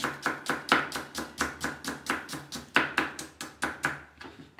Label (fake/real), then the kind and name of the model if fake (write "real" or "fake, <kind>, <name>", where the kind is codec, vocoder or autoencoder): real